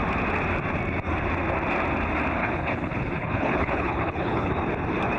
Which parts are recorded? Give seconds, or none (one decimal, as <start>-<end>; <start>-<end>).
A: 0.0-2.4; 4.5-5.2